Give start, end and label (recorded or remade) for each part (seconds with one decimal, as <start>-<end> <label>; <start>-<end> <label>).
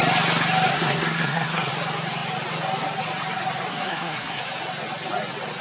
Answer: 0.0-0.7 recorded; 0.7-1.7 remade; 1.7-3.7 recorded; 3.7-4.4 remade; 4.4-5.6 recorded